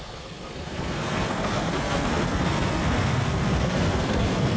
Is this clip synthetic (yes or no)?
yes